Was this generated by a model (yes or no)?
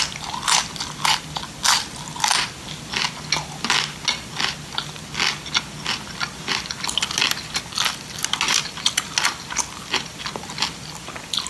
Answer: no